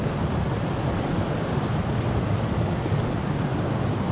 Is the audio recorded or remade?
recorded